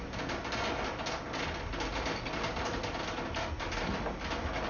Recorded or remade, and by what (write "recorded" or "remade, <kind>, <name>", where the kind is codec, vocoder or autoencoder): recorded